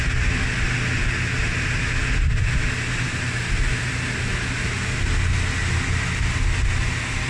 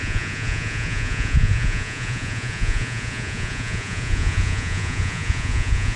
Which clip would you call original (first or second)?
first